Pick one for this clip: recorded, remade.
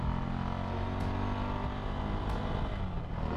recorded